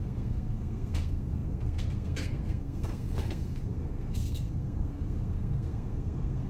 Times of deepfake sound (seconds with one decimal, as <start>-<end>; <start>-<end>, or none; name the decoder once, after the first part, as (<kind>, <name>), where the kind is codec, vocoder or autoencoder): 0.0-6.5 (codec, SNAC)